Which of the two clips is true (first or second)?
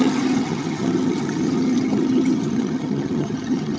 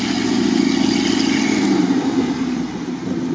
second